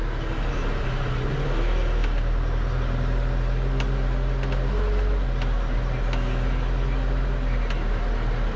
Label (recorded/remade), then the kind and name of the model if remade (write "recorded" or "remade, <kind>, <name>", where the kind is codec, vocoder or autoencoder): recorded